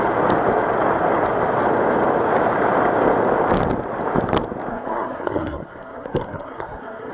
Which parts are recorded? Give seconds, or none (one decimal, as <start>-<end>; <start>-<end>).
0.0-4.7